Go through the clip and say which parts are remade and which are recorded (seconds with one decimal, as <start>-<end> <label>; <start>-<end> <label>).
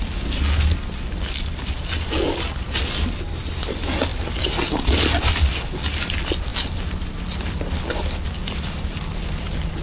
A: 0.0-9.8 recorded